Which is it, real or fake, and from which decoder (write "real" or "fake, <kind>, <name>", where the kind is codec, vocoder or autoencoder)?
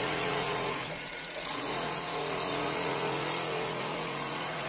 fake, vocoder, Vocos